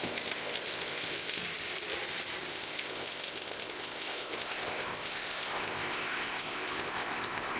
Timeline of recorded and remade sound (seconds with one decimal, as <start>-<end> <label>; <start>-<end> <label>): 0.0-1.4 remade; 1.4-2.5 recorded; 2.5-7.6 remade